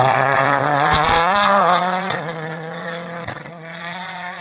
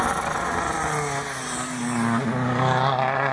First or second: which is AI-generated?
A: first